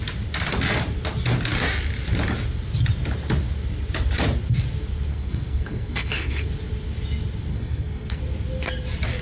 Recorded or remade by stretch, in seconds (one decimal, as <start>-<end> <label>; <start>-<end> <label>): 0.0-5.1 recorded; 5.1-6.5 remade; 6.5-7.5 recorded; 7.5-8.2 remade; 8.2-9.2 recorded